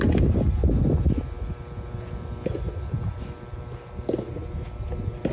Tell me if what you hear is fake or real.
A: real